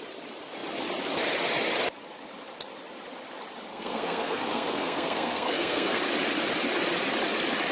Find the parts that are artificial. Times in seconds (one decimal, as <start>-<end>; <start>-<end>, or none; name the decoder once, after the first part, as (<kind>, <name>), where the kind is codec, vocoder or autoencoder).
3.7-6.0 (codec, SNAC)